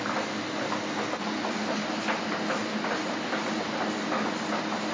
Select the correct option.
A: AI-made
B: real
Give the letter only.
B